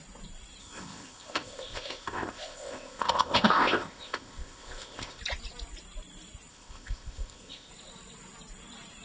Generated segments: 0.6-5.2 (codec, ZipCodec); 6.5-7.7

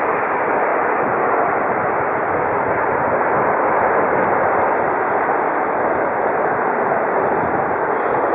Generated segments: none

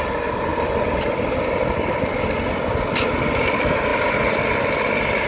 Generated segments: none